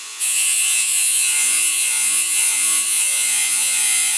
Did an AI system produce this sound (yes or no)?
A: yes